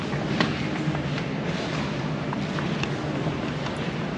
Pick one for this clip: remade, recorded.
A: recorded